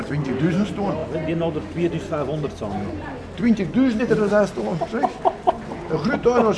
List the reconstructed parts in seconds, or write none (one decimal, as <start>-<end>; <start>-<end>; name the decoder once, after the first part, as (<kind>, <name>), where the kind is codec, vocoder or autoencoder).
none